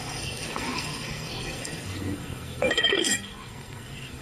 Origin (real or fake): fake